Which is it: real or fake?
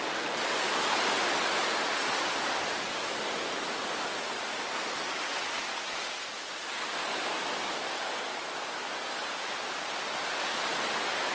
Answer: real